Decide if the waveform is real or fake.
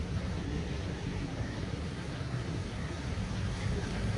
fake